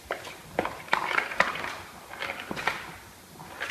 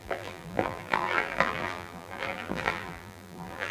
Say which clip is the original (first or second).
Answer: first